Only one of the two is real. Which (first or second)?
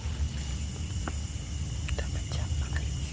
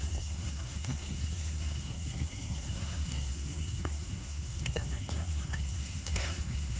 first